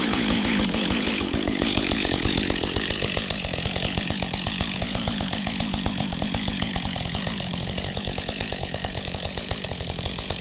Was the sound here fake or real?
fake